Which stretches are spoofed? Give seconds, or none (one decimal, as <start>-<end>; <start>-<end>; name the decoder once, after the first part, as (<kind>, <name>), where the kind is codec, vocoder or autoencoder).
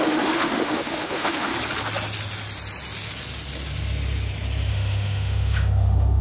0.0-1.5 (autoencoder, DAC-VAE); 4.7-6.2